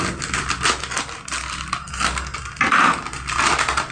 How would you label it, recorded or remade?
recorded